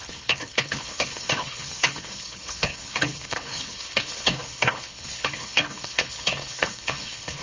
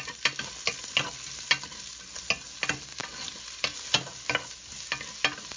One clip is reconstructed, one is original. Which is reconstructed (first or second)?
first